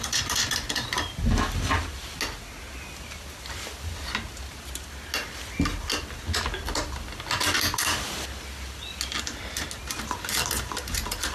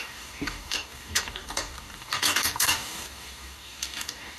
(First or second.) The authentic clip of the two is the first